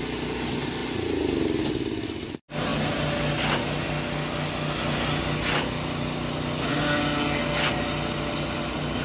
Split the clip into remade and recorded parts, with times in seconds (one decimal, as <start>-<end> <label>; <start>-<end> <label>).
0.0-9.0 recorded